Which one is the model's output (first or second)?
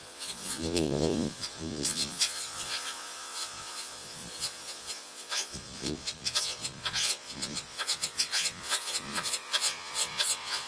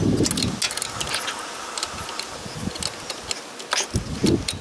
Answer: first